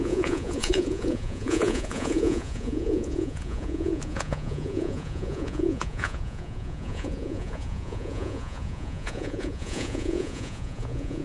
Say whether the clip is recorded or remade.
remade